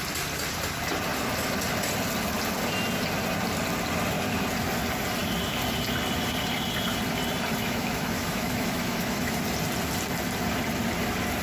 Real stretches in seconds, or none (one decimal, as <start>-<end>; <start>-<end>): 0.0-7.6; 9.3-11.4